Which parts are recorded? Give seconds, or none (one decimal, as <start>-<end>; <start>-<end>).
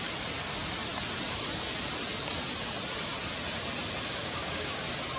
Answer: 0.0-4.2; 4.8-5.2